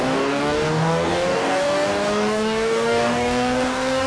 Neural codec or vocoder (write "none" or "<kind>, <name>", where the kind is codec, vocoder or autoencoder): codec, DAC